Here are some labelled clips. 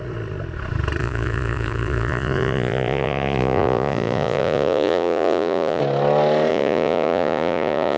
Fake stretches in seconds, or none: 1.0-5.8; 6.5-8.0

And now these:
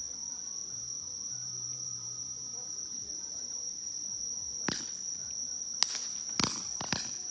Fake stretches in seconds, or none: 0.8-4.8

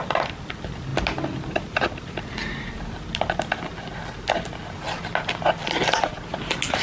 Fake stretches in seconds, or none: none

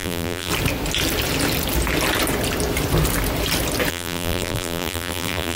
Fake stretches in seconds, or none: 0.0-0.5; 3.9-5.6

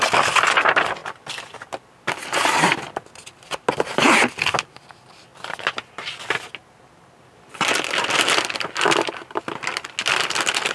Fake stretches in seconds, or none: none

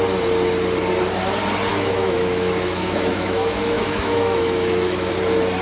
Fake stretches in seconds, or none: 1.7-5.1

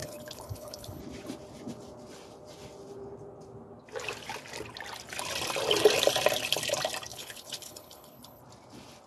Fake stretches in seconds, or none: 0.0-1.0; 7.1-8.4

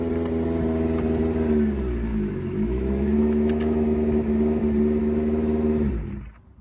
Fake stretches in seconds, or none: 2.1-4.6; 5.0-5.9